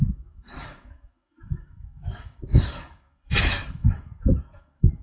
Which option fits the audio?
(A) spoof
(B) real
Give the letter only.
A